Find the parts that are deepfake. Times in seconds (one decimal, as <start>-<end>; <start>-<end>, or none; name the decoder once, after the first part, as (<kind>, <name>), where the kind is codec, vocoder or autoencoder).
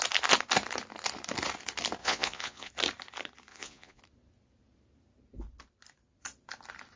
2.0-2.7 (vocoder, Vocos); 3.5-4.0